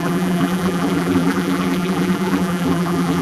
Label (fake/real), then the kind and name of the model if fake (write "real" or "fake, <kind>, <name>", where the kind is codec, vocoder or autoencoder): fake, vocoder, BigVGAN v2